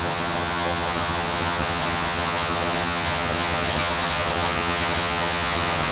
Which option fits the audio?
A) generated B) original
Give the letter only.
A